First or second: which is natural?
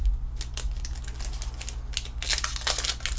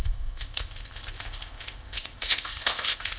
first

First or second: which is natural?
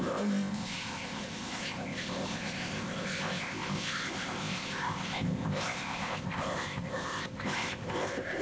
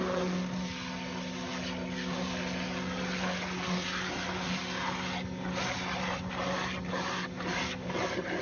second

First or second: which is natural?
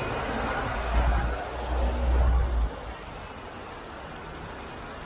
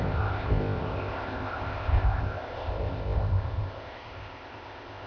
first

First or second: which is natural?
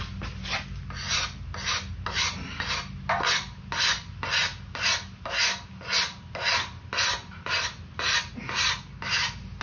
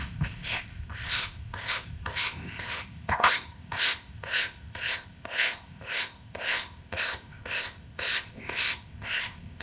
first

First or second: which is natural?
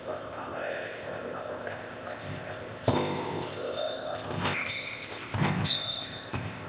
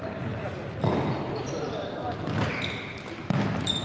second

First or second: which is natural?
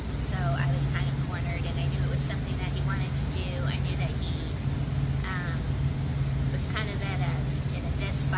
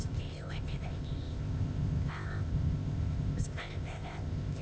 first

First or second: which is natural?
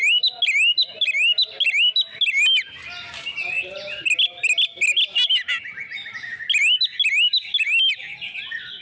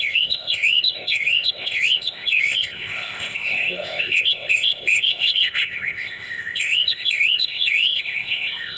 first